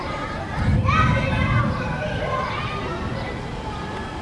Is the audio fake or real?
real